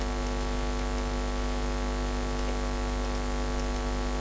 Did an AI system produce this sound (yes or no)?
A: no